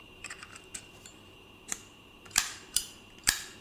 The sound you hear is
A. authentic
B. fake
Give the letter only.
B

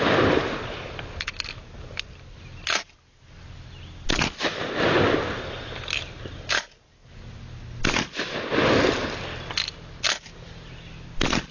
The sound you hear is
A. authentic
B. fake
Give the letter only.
A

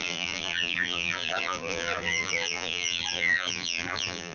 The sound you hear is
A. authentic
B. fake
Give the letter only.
B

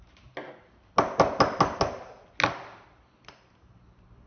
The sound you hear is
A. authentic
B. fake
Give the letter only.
A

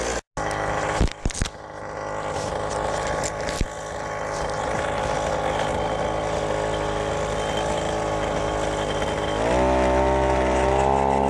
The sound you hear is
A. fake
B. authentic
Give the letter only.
B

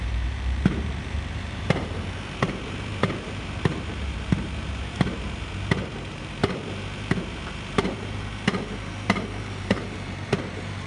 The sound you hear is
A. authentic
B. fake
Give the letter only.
B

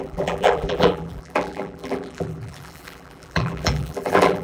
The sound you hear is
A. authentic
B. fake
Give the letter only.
B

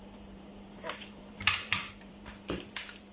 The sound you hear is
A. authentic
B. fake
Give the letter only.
B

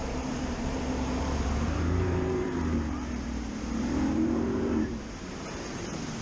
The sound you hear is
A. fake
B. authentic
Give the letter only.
A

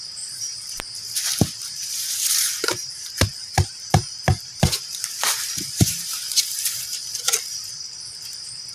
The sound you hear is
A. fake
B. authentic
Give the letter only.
A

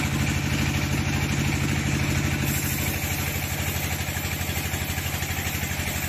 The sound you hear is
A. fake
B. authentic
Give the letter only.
B